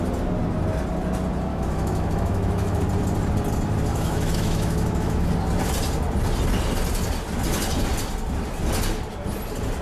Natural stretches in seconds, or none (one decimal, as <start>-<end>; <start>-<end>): 0.0-1.5; 2.8-3.9; 5.3-9.8